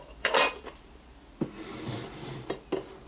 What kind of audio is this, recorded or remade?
recorded